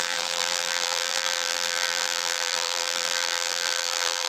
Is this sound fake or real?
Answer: fake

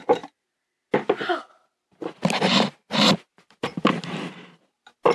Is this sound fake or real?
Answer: real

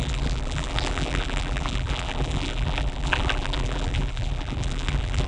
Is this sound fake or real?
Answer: fake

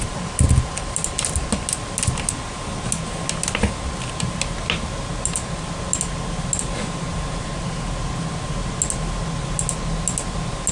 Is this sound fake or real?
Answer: real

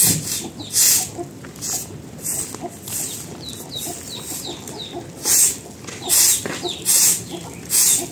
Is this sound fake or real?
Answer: real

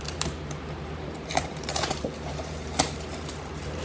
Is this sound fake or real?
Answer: fake